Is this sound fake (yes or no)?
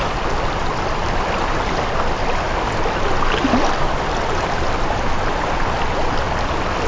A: no